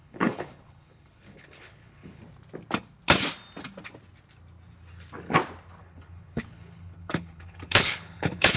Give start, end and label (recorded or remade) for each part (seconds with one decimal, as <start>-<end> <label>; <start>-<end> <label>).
0.0-2.2 remade; 2.2-5.8 recorded; 5.8-8.6 remade